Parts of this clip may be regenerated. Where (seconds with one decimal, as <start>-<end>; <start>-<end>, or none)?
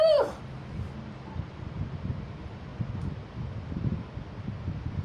none